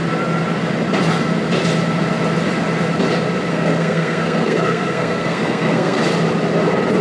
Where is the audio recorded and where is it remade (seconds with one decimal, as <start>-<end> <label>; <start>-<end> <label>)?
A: 0.0-3.5 recorded; 3.5-6.0 remade; 6.0-7.0 recorded